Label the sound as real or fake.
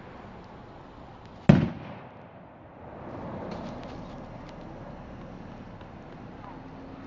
real